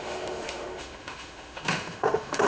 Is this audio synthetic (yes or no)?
yes